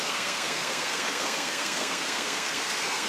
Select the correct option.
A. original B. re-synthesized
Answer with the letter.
B